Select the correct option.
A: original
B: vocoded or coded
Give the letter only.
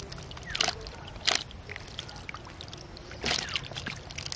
A